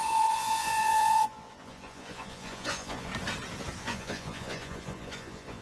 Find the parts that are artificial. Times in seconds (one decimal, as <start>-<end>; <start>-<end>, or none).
0.0-3.1; 3.8-5.6